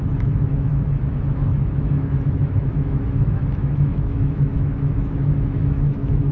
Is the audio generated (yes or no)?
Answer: yes